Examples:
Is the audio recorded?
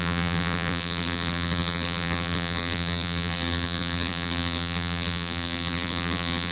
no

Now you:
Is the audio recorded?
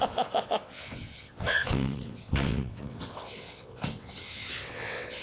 no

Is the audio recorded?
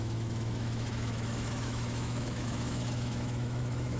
no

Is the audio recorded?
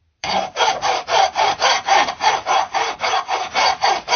no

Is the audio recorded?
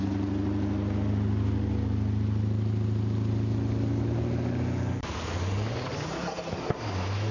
yes